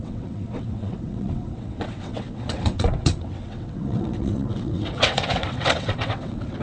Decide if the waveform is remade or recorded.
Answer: remade